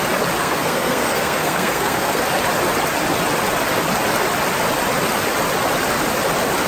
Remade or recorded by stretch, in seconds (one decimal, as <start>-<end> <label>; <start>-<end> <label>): 0.0-0.4 recorded; 0.4-2.2 remade; 2.2-6.7 recorded